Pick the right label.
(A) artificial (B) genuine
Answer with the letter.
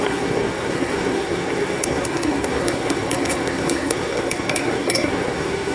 A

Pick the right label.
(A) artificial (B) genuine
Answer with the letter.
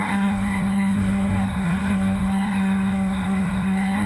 A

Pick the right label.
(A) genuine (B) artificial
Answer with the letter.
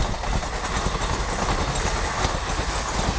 A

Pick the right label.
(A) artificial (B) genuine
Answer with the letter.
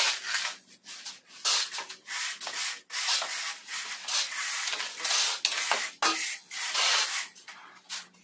B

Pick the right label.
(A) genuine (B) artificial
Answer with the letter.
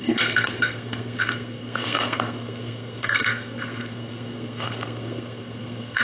B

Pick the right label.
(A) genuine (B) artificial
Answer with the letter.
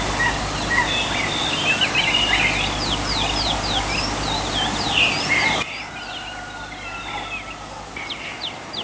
A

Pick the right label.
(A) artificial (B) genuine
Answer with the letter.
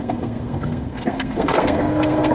A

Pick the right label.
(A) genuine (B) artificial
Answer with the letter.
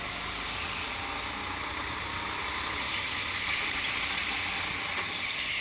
A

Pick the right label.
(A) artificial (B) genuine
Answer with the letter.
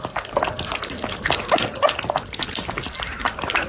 B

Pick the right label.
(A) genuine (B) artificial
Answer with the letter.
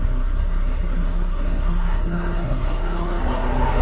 B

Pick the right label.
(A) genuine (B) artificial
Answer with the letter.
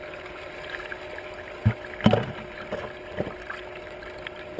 A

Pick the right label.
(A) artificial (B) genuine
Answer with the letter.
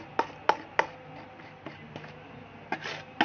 B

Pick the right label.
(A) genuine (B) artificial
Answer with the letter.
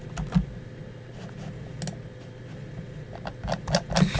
A